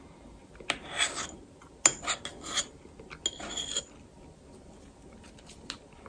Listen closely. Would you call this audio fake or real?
real